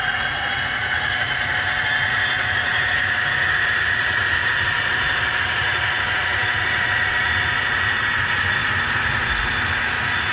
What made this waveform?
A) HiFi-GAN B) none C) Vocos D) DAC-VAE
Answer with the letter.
C